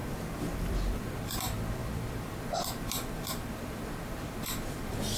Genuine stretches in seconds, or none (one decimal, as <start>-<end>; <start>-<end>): none